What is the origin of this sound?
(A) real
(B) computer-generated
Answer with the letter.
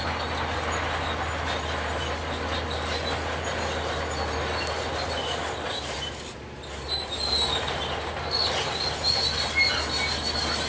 A